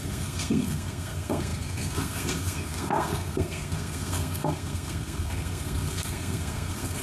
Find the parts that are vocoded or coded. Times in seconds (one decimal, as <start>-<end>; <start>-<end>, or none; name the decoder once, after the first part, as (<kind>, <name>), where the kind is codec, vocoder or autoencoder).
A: 0.0-7.0 (codec, SNAC)